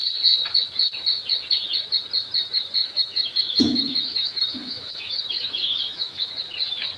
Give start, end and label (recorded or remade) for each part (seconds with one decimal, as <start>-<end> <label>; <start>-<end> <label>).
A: 0.0-2.8 recorded; 2.8-6.3 remade; 6.3-7.0 recorded